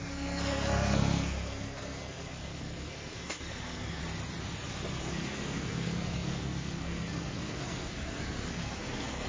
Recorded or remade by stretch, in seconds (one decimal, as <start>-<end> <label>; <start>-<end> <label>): 0.0-4.0 remade; 4.0-5.0 recorded; 5.0-9.3 remade